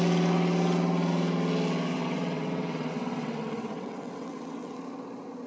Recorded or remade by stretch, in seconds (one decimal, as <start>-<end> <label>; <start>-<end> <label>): 0.0-1.9 recorded; 1.9-4.8 remade; 4.8-5.5 recorded